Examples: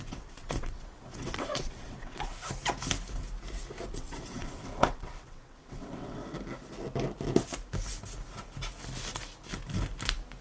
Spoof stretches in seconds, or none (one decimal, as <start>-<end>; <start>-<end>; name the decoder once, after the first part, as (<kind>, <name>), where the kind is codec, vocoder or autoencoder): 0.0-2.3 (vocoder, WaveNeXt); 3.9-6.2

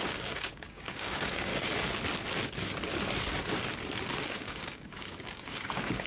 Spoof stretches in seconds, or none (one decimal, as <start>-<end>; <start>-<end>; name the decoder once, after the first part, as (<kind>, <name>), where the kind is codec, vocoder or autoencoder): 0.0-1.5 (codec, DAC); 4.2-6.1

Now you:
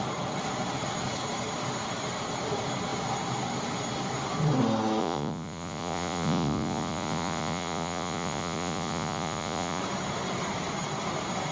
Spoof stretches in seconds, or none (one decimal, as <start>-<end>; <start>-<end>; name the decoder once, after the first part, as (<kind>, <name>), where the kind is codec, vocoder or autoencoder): 5.0-9.8 (vocoder, Vocos)

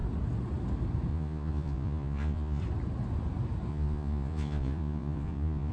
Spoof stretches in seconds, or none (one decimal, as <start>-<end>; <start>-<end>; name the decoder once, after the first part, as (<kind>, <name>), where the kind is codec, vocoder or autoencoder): 1.1-2.6 (vocoder, Vocos); 3.7-5.7

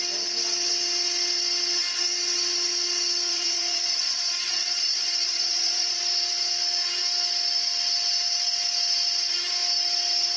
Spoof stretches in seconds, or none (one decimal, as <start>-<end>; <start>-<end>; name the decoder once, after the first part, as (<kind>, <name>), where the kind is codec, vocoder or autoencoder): 3.3-6.0 (vocoder, Vocos)

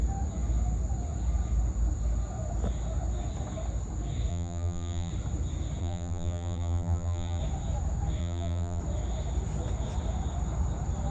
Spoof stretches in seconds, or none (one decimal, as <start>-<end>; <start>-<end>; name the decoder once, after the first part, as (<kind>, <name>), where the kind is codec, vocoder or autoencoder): 4.3-5.1 (vocoder, BigVGAN v2); 5.8-7.4; 8.2-8.8

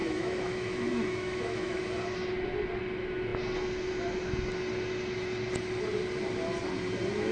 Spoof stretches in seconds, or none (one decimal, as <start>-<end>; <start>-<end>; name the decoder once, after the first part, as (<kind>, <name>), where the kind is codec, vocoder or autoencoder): 0.0-1.8 (autoencoder, DAC-VAE)

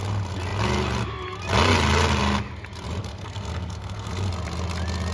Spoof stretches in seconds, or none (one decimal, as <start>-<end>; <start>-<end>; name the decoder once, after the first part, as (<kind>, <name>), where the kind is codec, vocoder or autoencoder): 3.0-4.3 (codec, SNAC)